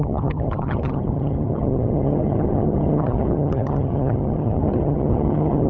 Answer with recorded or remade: remade